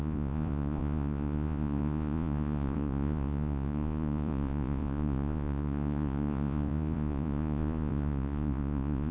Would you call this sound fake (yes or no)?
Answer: yes